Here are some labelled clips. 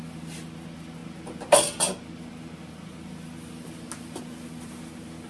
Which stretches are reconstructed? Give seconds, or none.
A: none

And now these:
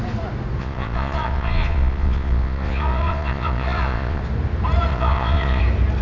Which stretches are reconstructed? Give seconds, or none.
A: 0.6-4.2 (vocoder, Vocos); 4.9-5.6

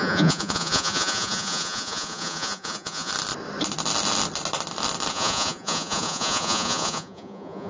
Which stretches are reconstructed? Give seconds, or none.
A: 0.0-3.1 (vocoder, Vocos); 5.1-7.7

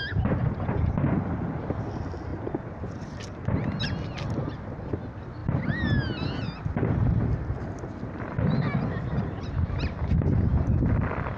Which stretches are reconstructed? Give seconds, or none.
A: none

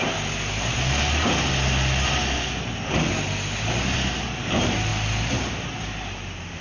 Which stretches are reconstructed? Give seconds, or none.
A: none

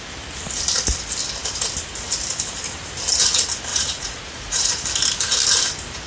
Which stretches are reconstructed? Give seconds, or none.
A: 3.7-4.8 (vocoder, Vocos)

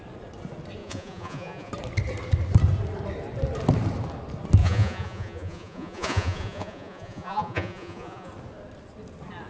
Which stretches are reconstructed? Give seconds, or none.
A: 0.8-1.7 (vocoder, Vocos); 4.6-8.3

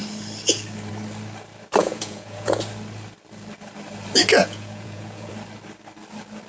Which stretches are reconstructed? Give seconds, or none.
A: 1.8-2.6 (vocoder, Vocos); 4.4-5.3